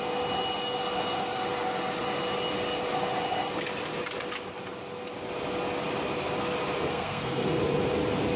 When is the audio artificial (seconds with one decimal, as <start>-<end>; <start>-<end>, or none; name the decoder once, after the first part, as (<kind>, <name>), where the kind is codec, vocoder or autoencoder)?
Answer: 6.9-7.6 (codec, SNAC)